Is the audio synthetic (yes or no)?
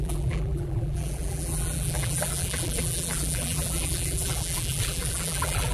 yes